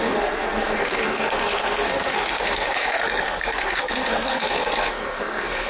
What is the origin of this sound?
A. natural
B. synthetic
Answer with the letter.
B